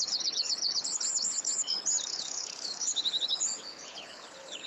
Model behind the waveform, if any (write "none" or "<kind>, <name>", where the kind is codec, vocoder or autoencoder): codec, HILCodec